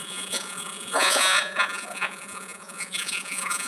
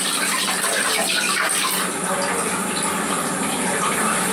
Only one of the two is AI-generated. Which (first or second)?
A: first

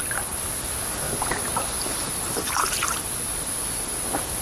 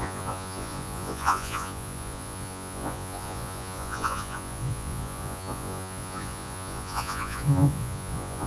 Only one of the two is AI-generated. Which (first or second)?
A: second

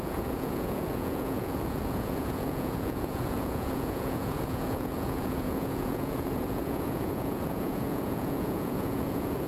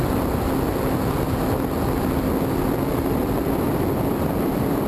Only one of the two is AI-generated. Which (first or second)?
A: first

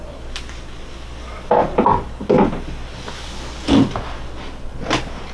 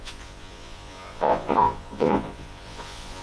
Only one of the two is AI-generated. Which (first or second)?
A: second